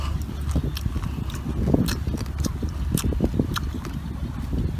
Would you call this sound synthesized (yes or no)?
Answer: no